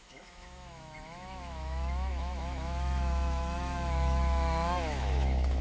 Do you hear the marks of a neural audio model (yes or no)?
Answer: yes